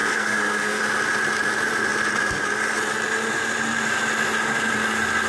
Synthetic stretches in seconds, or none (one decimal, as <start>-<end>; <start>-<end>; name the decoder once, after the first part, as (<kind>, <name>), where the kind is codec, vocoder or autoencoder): 0.0-0.8 (codec, SNAC)